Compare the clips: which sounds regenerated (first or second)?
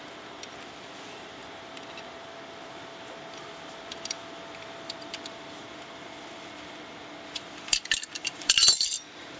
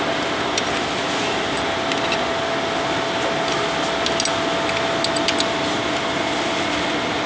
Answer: first